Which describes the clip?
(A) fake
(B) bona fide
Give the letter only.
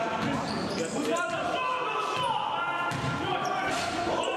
B